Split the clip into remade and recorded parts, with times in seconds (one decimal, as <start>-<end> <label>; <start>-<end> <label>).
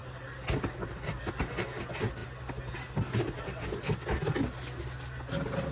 0.0-5.7 recorded